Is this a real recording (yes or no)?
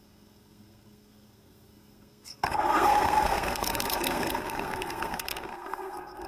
no